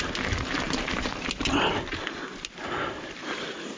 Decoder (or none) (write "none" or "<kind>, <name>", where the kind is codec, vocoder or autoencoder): none